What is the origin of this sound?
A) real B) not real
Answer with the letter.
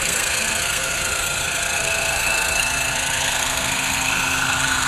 B